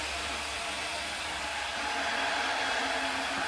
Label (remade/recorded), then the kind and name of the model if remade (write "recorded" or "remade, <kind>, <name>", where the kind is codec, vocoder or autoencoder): recorded